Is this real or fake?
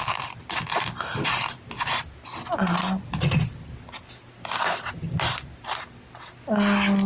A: real